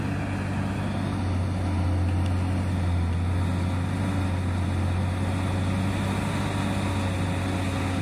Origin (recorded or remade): recorded